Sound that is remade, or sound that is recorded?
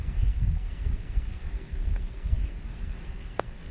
remade